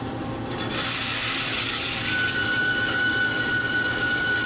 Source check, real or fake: real